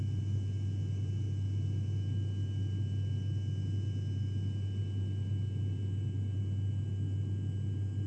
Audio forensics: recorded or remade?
recorded